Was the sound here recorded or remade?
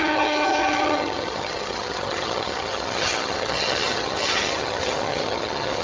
remade